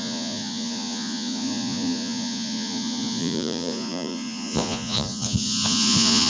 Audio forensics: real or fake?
fake